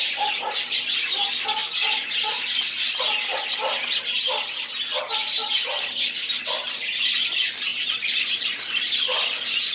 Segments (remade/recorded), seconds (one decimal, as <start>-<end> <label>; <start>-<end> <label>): 0.0-9.7 recorded